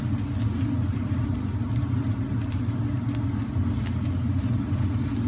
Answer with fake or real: real